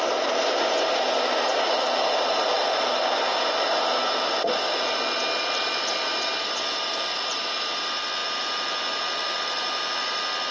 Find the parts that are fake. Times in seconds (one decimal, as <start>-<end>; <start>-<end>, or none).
none